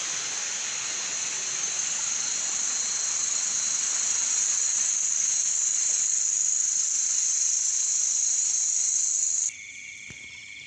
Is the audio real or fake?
real